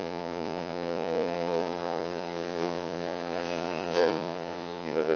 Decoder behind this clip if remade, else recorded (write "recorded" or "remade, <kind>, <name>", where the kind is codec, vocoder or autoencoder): remade, vocoder, Vocos